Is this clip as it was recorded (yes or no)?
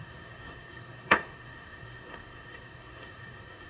no